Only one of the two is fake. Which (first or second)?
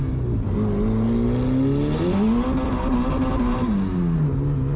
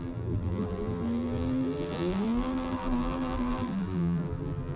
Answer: second